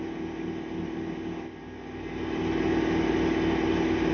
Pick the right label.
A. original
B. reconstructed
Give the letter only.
A